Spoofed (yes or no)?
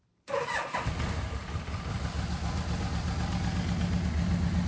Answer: no